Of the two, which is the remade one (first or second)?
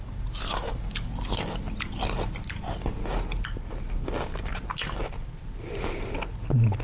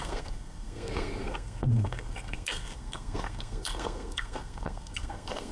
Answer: second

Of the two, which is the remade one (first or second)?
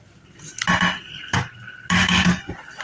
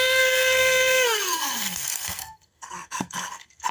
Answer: second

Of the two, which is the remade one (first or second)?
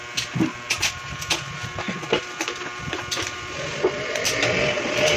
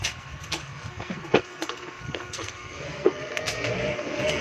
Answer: second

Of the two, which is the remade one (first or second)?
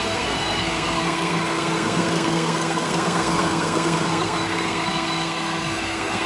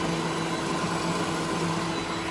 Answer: first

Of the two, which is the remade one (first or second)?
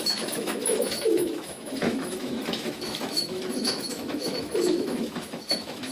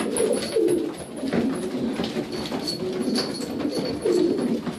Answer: first